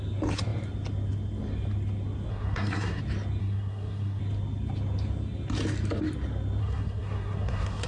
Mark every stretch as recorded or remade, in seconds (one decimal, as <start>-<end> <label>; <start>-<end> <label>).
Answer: 0.0-2.3 recorded; 2.3-3.0 remade; 3.0-3.4 recorded; 3.4-4.2 remade; 4.2-6.6 recorded; 6.6-7.9 remade